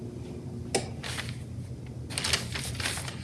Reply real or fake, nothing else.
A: real